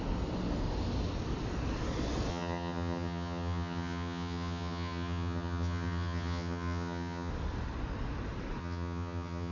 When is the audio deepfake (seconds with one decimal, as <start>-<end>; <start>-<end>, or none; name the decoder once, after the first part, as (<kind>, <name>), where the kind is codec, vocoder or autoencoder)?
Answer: 2.3-7.3 (vocoder, HiFi-GAN); 8.6-9.5